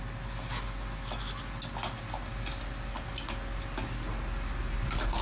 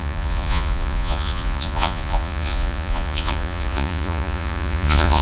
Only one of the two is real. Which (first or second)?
first